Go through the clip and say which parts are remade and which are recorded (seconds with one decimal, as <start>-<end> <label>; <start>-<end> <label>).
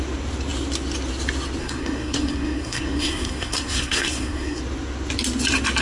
0.0-1.6 recorded; 1.6-4.6 remade; 4.6-5.8 recorded